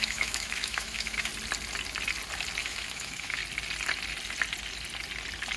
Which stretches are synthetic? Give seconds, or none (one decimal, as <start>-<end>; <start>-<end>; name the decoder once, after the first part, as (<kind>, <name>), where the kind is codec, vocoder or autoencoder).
0.0-1.3 (autoencoder, DAC-VAE); 2.6-3.4